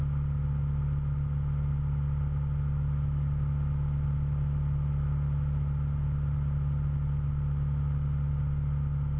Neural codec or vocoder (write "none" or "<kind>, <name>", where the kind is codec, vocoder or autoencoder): none